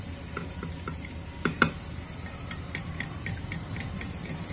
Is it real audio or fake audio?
fake